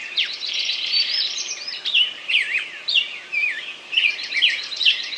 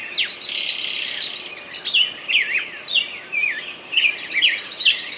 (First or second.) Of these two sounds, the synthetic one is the first